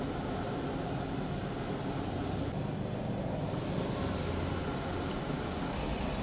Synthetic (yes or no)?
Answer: no